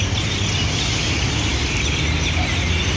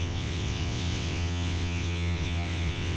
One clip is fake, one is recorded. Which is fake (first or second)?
second